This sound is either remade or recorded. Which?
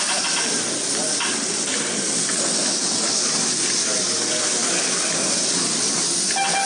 recorded